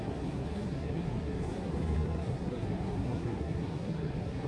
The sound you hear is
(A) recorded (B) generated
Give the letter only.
B